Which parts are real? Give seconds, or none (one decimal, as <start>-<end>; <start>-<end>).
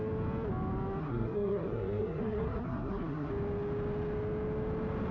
0.0-1.0; 3.3-5.1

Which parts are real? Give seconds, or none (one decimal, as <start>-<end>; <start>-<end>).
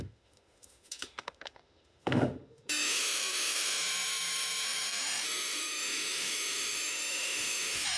none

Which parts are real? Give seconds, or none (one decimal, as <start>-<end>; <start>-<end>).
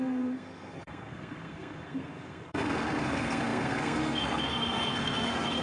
none